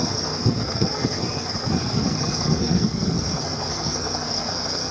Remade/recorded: remade